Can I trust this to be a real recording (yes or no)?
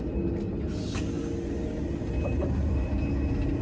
yes